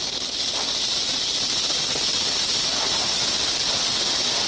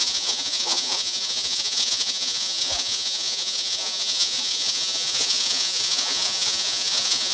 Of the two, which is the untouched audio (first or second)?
first